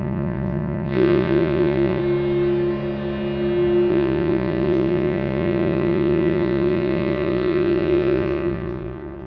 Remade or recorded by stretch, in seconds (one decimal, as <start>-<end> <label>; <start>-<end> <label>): 0.0-2.0 remade; 2.0-3.9 recorded; 3.9-9.3 remade